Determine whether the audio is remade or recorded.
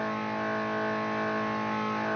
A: recorded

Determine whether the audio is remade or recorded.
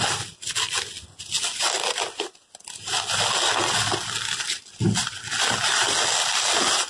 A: recorded